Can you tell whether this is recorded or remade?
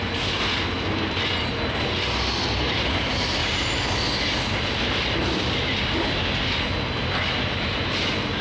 recorded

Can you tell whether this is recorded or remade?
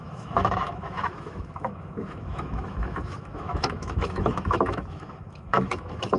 remade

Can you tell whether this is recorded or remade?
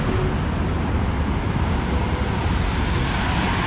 recorded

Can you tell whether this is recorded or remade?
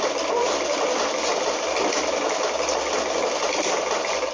recorded